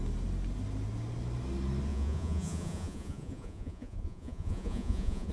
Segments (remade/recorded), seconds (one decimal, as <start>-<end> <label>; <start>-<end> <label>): 0.0-1.9 recorded; 1.9-5.3 remade